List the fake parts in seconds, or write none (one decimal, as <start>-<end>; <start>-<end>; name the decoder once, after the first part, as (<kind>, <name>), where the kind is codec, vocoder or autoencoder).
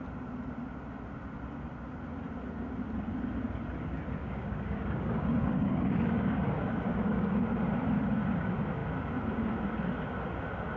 4.2-7.4 (codec, DAC)